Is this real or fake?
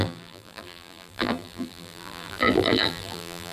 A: fake